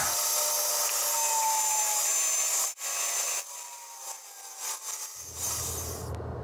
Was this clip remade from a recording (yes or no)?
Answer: no